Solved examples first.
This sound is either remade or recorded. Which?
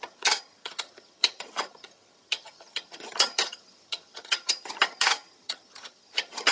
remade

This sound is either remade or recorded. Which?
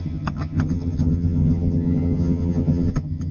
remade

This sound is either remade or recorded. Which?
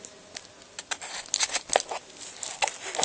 recorded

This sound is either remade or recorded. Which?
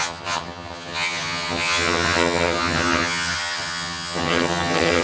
remade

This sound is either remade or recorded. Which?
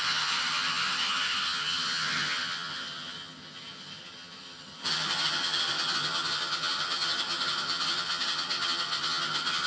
remade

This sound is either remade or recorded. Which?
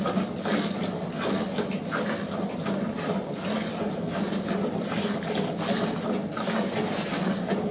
recorded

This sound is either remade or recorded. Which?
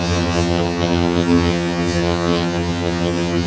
remade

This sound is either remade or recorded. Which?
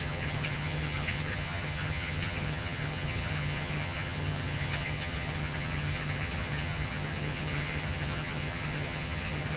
remade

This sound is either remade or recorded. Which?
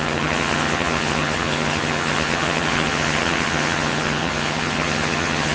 remade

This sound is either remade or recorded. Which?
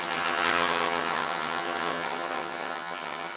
remade